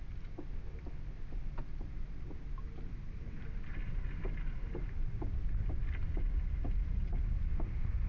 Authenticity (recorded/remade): recorded